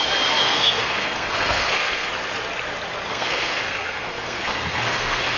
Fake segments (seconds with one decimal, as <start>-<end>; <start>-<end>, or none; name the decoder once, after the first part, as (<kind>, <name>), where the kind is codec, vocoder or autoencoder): 0.4-2.1 (codec, SNAC); 3.1-5.4